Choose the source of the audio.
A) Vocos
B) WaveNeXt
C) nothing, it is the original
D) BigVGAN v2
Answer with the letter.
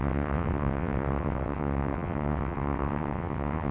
B